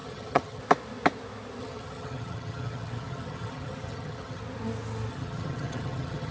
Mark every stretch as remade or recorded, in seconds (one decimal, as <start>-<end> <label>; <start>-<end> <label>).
0.0-0.6 remade; 0.6-1.6 recorded; 1.6-4.4 remade; 4.4-5.1 recorded; 5.1-6.3 remade